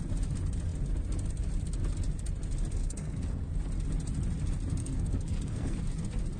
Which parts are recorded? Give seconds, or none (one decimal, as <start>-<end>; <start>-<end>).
0.0-2.8; 3.4-4.8; 5.8-6.4